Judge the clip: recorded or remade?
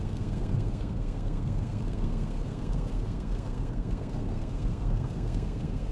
remade